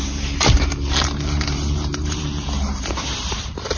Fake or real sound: fake